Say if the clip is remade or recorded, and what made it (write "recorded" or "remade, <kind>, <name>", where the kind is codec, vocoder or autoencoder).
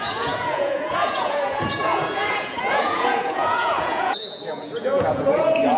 remade, vocoder, Vocos